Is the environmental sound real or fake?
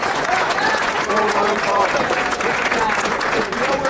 fake